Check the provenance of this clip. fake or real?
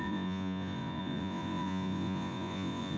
fake